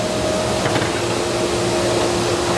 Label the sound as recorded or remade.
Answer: recorded